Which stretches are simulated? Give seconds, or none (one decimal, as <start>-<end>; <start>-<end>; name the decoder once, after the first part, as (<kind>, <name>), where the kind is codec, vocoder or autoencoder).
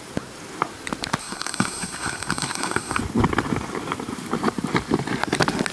1.2-3.0 (codec, SNAC)